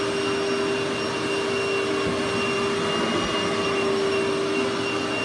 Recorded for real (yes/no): yes